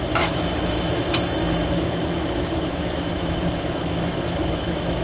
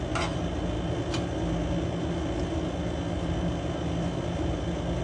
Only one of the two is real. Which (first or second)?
second